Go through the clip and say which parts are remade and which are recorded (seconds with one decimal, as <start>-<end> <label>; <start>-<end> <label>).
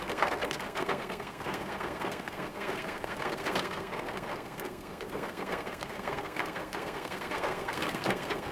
0.0-8.5 remade